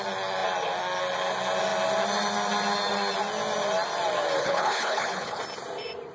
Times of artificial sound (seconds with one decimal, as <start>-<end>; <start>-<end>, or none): 4.4-5.4